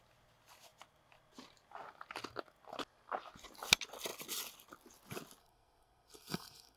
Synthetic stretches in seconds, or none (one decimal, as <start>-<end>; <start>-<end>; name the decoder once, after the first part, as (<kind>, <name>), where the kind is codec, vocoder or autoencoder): 5.4-6.8 (codec, SNAC)